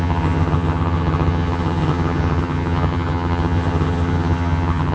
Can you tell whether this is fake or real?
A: fake